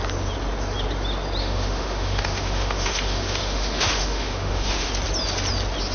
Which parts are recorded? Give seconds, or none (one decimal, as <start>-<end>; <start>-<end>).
0.0-1.4; 4.9-5.9